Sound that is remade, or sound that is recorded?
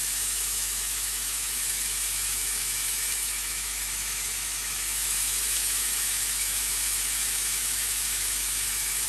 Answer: remade